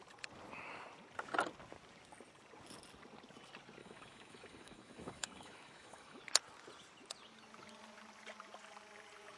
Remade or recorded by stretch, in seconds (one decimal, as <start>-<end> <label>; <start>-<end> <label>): 0.0-3.8 recorded; 3.8-6.2 remade; 6.2-9.4 recorded